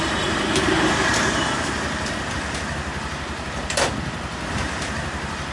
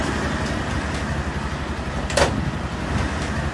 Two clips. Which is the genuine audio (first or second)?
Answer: second